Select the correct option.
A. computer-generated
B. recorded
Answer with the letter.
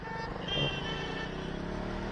B